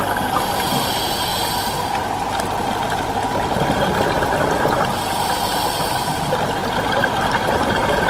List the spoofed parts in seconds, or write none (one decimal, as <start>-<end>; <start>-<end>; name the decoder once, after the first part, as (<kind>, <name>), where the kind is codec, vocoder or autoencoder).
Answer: 0.0-1.3 (vocoder, BigVGAN v2); 2.1-6.6; 7.5-8.1